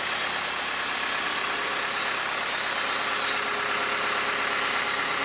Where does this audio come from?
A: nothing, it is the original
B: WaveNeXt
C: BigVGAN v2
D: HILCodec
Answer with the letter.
A